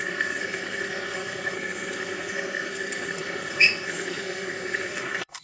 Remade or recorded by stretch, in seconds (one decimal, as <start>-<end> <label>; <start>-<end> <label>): 0.0-5.4 remade